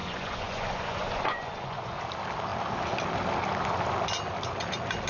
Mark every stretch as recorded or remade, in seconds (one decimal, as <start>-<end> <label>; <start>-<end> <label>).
0.0-2.0 remade; 2.0-5.1 recorded